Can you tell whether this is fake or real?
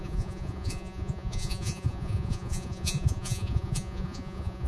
fake